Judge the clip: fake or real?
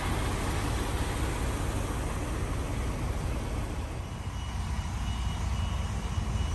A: real